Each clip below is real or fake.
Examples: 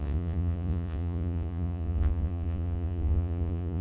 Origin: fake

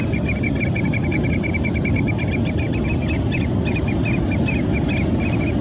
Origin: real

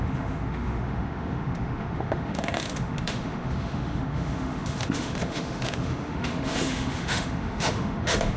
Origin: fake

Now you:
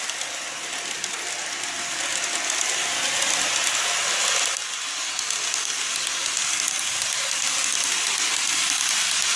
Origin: real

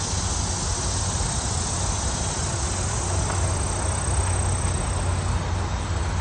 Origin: real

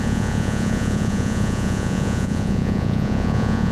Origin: fake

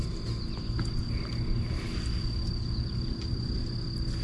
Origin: real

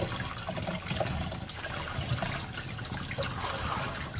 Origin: real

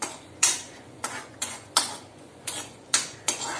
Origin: fake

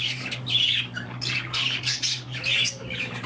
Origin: fake